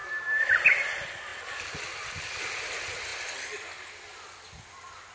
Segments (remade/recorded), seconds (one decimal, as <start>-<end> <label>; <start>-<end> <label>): 0.0-0.7 remade; 0.7-1.3 recorded; 1.3-2.5 remade; 2.5-3.1 recorded; 3.1-3.7 remade; 3.7-5.1 recorded